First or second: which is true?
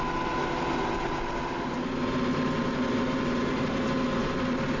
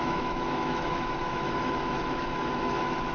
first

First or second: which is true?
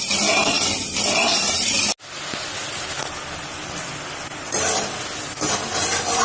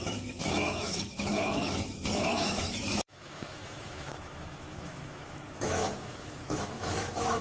first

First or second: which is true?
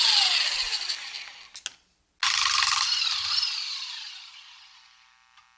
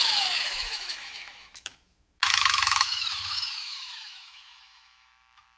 first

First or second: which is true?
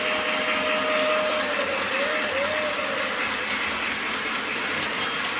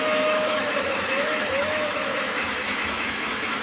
first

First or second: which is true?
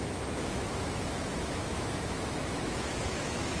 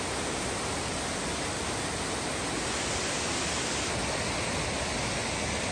second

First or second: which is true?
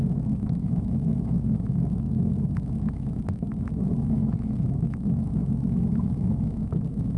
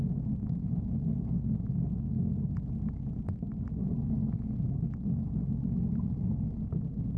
second